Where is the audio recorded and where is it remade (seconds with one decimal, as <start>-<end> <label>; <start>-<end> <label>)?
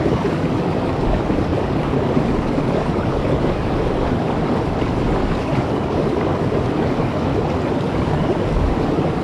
0.0-7.3 remade; 7.3-7.8 recorded; 7.8-9.2 remade